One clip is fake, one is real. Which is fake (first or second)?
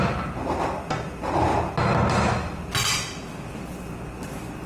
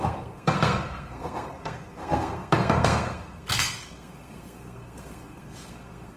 second